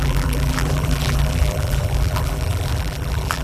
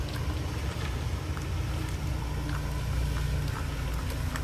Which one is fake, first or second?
first